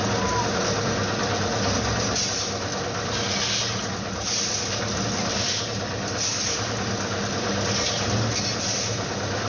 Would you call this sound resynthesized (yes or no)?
no